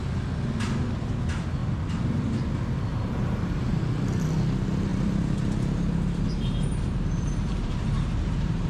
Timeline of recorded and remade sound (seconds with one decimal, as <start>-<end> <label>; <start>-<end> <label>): 0.0-2.9 recorded; 2.9-3.8 remade; 3.8-4.9 recorded; 4.9-8.7 remade